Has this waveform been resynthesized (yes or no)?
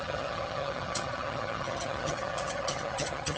yes